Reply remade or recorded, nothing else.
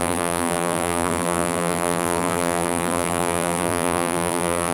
remade